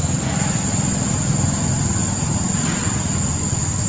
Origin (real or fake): real